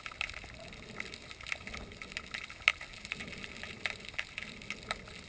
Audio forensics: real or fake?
real